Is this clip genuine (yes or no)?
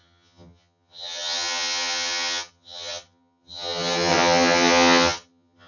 no